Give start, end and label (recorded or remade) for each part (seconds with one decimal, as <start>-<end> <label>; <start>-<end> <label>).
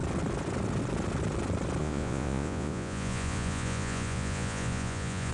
0.0-1.8 recorded; 1.8-5.3 remade